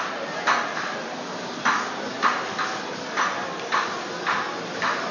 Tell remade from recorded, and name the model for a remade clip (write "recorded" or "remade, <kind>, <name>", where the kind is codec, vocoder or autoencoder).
recorded